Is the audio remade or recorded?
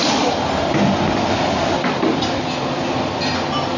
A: recorded